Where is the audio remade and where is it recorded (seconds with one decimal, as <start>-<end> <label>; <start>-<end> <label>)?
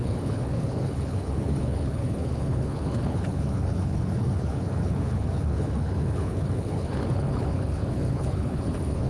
0.0-9.1 remade